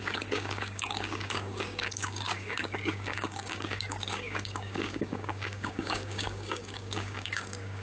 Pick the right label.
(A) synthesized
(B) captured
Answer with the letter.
A